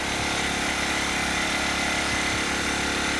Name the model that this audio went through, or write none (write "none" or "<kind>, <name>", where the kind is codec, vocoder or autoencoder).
none